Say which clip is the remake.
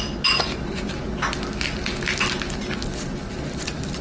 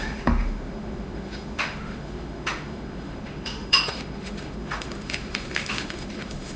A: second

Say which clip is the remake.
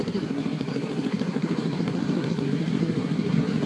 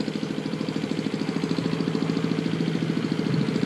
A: first